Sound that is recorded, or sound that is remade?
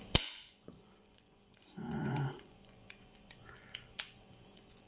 remade